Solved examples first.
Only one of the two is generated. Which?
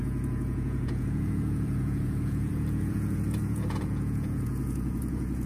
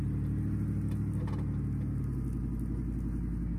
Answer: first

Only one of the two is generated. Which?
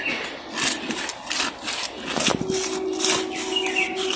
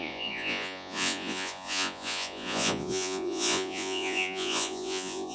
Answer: second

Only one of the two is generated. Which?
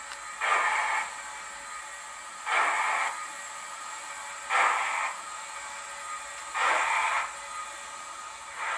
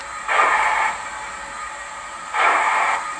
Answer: second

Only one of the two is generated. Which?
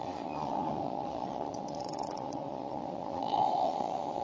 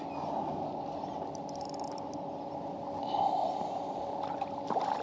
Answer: first